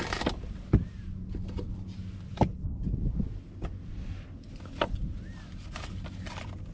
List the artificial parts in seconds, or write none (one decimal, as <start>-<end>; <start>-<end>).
none